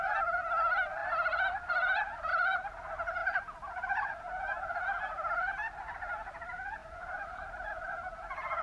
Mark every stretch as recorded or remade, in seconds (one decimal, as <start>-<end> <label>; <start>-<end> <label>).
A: 0.0-3.2 recorded; 3.2-4.2 remade; 4.2-6.8 recorded; 6.8-7.9 remade; 7.9-8.6 recorded

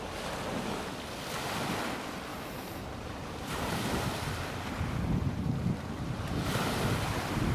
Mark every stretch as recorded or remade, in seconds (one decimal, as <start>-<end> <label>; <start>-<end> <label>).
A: 0.0-2.3 recorded; 2.3-4.1 remade; 4.1-7.5 recorded

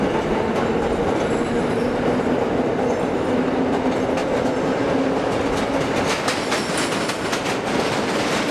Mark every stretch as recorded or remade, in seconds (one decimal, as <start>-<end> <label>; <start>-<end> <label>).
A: 0.0-8.5 recorded

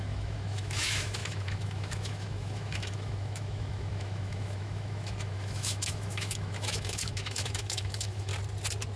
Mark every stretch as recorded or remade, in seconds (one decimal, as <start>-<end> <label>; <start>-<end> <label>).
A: 0.0-8.3 remade; 8.3-9.0 recorded

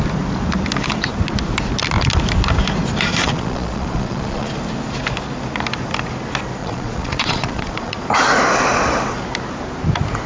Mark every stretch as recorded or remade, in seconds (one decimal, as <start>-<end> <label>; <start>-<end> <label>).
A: 0.0-3.2 recorded; 3.2-4.5 remade; 4.5-6.6 recorded; 6.6-8.1 remade; 8.1-10.3 recorded

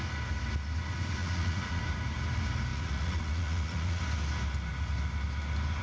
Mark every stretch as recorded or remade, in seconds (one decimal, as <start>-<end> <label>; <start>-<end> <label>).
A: 0.0-1.2 recorded; 1.2-1.8 remade; 1.8-2.7 recorded; 2.7-4.0 remade; 4.0-5.8 recorded